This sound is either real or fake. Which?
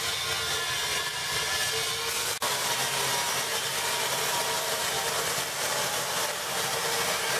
real